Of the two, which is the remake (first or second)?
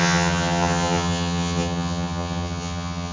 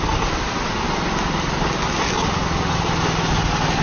first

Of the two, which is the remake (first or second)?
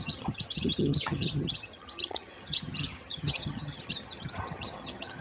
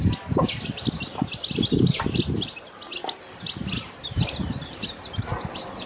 first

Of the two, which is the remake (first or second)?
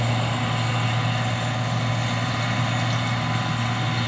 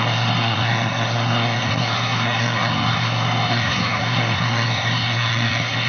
second